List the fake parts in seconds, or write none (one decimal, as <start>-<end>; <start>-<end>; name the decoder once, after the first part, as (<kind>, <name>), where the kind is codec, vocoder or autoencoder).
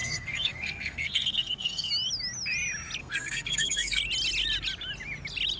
0.0-1.9 (codec, SNAC); 3.0-4.0